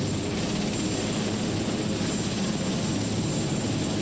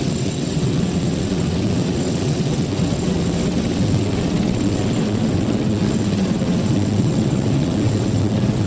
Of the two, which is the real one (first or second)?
first